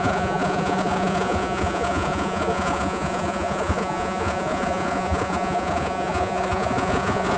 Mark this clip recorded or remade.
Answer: remade